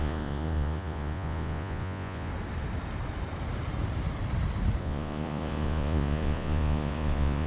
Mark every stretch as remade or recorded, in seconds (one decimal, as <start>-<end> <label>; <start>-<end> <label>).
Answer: 0.0-2.3 remade; 2.3-4.8 recorded; 4.8-7.5 remade